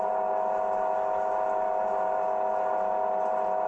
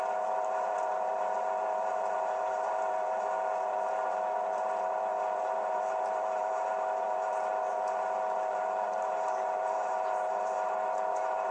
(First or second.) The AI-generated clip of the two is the second